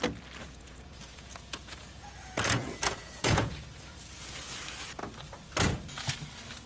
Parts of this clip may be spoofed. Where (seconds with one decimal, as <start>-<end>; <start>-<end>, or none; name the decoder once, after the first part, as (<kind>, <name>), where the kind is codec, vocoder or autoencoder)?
0.4-4.4 (vocoder, Vocos)